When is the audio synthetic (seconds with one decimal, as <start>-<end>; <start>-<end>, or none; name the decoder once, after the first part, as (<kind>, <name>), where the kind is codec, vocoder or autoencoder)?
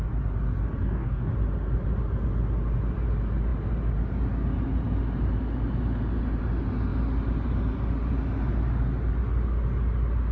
0.8-1.3 (codec, DAC)